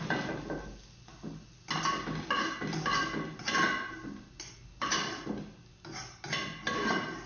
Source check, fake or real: real